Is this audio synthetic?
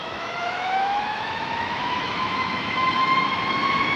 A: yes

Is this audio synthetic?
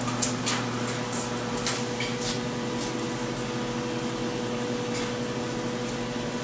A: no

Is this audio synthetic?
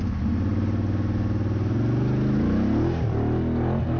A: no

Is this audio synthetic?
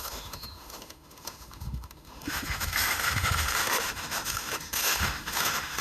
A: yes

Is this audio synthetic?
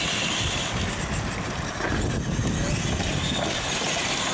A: no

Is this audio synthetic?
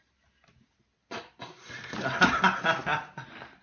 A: no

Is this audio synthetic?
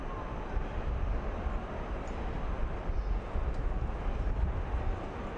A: no